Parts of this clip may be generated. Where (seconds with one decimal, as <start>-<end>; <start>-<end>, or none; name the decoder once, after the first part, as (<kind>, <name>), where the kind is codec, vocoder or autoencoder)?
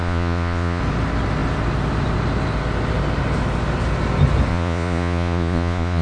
0.0-0.8 (vocoder, Vocos); 4.5-6.0